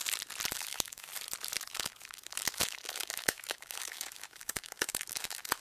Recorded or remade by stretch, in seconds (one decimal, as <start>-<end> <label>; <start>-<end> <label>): 0.0-0.5 recorded; 0.5-1.1 remade; 1.1-1.7 recorded; 1.7-5.6 remade